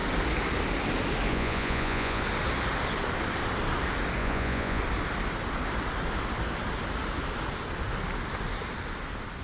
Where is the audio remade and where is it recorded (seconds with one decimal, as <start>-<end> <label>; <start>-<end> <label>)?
0.0-1.3 recorded; 1.3-2.2 remade; 2.2-4.2 recorded; 4.2-4.8 remade; 4.8-9.4 recorded